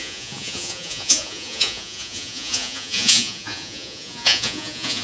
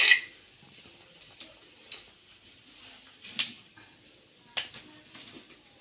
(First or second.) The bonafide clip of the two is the second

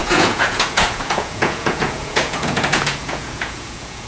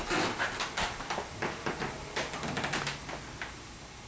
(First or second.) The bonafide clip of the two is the second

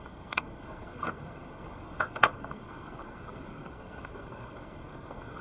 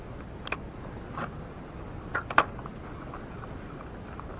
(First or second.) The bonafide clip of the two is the second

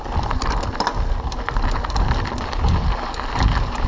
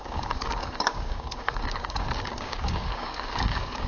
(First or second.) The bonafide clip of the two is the first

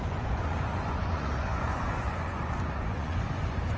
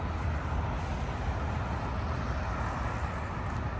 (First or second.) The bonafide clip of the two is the second